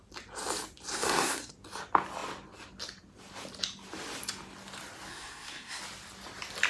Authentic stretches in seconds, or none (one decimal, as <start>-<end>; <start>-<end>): 0.0-0.9; 1.5-5.1; 5.8-6.7